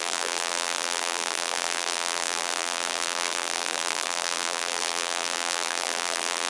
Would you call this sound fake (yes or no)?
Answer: yes